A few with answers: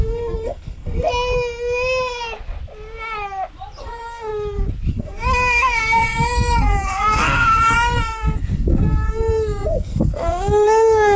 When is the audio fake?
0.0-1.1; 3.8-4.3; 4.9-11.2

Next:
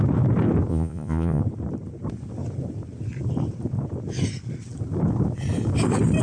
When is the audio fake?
0.7-1.4

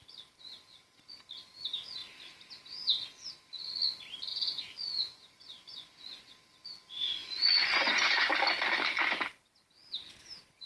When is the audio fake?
4.3-6.3; 7.2-8.3